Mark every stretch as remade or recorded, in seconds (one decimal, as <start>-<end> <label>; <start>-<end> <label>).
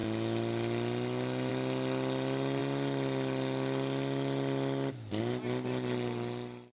0.0-6.7 recorded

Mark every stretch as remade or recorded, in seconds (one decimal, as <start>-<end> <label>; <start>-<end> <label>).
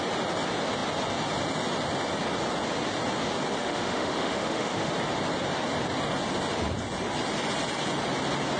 0.0-3.6 recorded; 3.6-4.9 remade; 4.9-8.6 recorded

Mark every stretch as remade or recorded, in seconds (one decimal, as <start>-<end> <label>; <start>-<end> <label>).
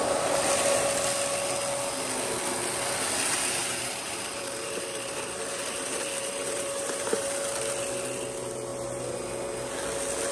0.0-3.6 recorded; 3.6-7.3 remade; 7.3-10.3 recorded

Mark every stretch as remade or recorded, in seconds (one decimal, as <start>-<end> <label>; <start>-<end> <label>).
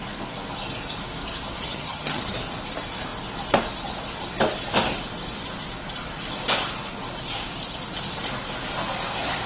0.0-1.7 recorded; 1.7-2.2 remade; 2.2-9.5 recorded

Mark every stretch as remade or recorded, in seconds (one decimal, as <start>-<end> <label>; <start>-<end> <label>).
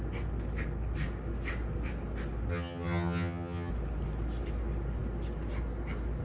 0.0-2.5 recorded; 2.5-3.7 remade; 3.7-6.2 recorded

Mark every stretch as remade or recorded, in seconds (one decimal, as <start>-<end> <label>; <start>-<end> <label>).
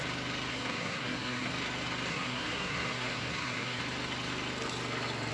0.0-0.5 recorded; 0.5-1.5 remade; 1.5-2.1 recorded; 2.1-3.8 remade; 3.8-5.3 recorded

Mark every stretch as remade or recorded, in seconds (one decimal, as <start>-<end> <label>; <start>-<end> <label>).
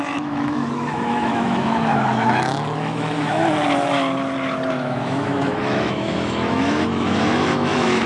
0.0-3.4 remade; 3.4-4.7 recorded; 4.7-8.1 remade